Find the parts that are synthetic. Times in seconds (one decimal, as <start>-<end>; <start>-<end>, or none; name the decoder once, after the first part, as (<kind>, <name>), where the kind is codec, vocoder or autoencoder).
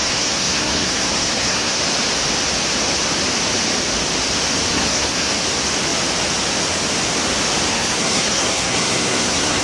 0.0-1.8 (codec, SNAC); 4.7-5.3; 7.7-9.6